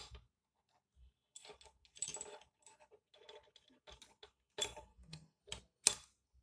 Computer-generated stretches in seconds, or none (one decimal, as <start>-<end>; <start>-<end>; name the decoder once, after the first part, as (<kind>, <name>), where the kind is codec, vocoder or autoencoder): 4.9-5.4 (codec, SNAC)